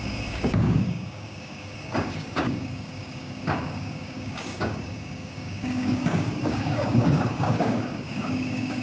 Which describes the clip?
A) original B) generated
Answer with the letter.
B